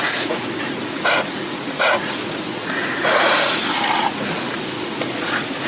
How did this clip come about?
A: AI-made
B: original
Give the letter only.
A